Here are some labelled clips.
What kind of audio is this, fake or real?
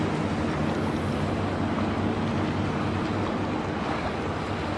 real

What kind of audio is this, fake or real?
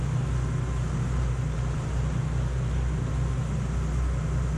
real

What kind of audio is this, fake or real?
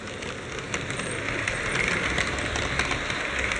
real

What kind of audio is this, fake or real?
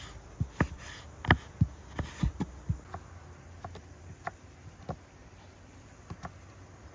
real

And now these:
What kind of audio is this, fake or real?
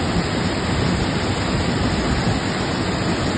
real